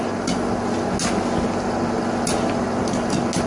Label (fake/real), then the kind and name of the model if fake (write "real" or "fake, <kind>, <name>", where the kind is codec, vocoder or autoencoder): real